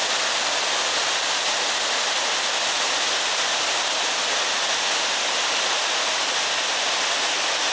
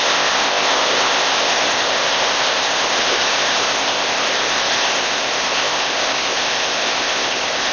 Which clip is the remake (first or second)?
second